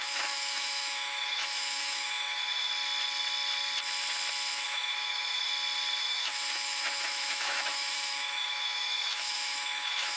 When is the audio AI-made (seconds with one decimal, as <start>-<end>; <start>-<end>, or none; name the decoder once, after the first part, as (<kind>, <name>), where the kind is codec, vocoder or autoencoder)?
0.0-2.7 (autoencoder, DAC-VAE); 4.5-5.5; 6.0-10.2

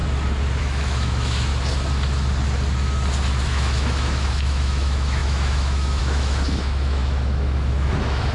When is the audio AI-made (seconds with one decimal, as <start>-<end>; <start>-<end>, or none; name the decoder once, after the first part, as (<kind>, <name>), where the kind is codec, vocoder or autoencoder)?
0.6-1.5 (autoencoder, DAC-VAE); 3.3-8.3

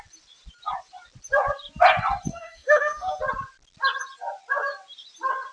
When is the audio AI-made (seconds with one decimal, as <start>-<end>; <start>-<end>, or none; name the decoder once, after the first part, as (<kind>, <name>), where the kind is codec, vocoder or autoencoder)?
2.3-3.2 (autoencoder, DAC-VAE)

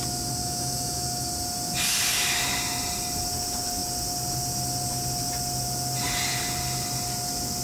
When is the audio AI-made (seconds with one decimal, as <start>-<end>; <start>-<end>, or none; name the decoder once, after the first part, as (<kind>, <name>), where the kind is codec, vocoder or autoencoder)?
0.4-1.3 (autoencoder, DAC-VAE)